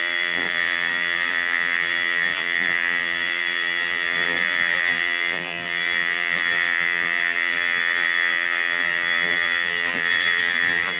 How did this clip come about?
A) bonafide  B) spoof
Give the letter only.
B